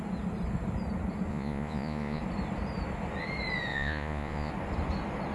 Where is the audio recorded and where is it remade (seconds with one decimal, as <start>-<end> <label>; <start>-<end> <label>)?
0.0-1.3 recorded; 1.3-2.2 remade; 2.2-3.7 recorded; 3.7-4.5 remade; 4.5-5.3 recorded